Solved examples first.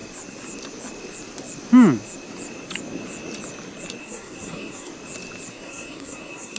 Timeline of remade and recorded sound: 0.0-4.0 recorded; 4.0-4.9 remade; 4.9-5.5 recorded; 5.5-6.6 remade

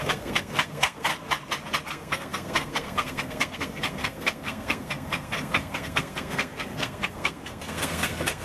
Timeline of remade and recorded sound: 0.0-1.1 remade; 1.1-1.9 recorded; 1.9-8.4 remade

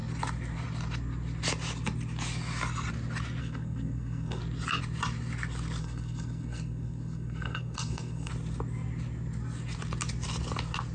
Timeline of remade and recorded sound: 0.0-3.4 recorded; 3.4-4.4 remade; 4.4-5.8 recorded; 5.8-8.3 remade; 8.3-10.9 recorded

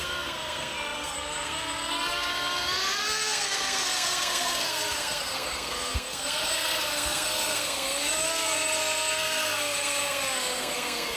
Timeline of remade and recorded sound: 0.0-11.2 remade

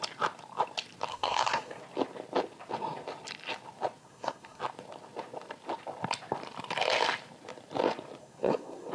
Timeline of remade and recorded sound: 0.0-1.1 recorded; 1.1-1.8 remade; 1.8-4.0 recorded; 4.0-4.6 remade; 4.6-8.2 recorded; 8.2-8.9 remade